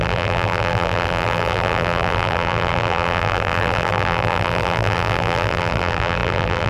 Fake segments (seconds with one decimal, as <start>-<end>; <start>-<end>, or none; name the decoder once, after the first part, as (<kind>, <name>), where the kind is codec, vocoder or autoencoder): 0.0-6.7 (vocoder, BigVGAN v2)

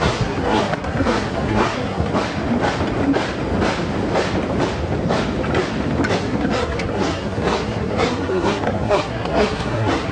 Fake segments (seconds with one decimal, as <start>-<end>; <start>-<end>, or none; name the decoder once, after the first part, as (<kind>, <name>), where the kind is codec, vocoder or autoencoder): 0.0-2.1 (codec, SNAC); 6.2-10.1

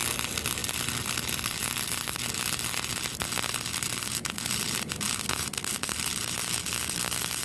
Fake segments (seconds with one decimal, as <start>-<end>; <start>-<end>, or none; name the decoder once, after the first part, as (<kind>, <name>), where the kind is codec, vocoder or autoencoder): none

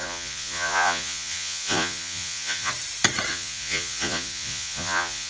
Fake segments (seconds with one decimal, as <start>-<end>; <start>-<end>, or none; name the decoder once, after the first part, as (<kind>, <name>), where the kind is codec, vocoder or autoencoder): 0.0-2.7 (vocoder, Vocos); 3.3-5.3

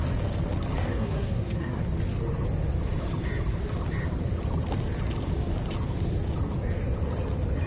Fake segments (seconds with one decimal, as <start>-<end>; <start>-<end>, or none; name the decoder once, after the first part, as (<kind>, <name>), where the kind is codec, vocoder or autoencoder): 0.9-1.8 (codec, SNAC)

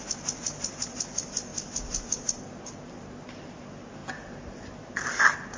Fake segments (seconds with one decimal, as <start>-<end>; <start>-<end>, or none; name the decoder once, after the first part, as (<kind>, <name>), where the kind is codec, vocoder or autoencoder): none

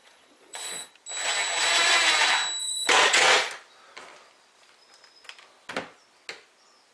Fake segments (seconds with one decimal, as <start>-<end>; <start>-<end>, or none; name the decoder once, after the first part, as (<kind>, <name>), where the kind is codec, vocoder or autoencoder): 0.0-0.9 (vocoder, Vocos); 2.6-3.5

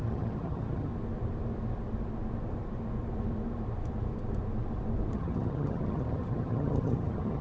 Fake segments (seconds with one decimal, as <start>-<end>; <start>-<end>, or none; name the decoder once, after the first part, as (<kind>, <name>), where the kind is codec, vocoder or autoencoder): 0.0-0.9 (vocoder, HiFi-GAN); 5.1-7.4